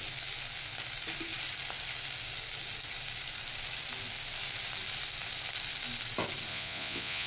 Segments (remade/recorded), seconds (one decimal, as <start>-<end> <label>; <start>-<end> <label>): 0.0-6.5 recorded; 6.5-7.3 remade